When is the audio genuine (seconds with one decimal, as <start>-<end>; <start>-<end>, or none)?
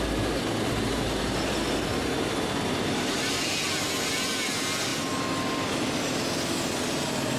0.0-7.4